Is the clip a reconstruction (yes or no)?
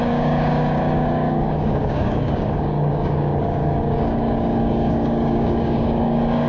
yes